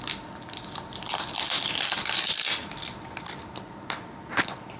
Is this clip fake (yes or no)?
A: no